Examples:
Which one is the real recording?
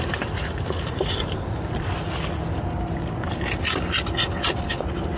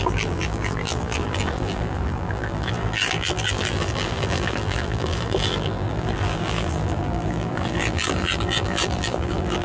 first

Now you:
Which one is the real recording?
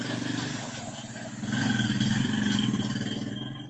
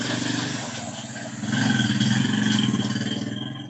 second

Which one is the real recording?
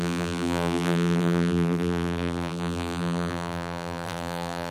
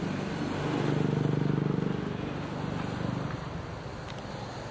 second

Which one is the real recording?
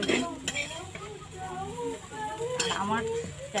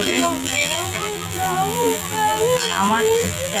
first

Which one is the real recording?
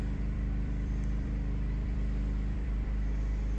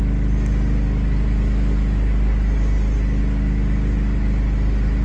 second